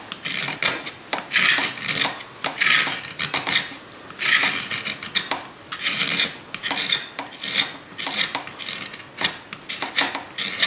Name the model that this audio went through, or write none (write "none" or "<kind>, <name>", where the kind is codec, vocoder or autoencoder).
none